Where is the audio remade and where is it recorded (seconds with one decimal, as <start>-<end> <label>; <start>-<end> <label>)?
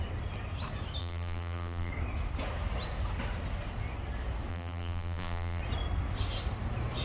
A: 0.0-1.0 recorded; 1.0-1.9 remade; 1.9-4.5 recorded; 4.5-5.6 remade; 5.6-7.0 recorded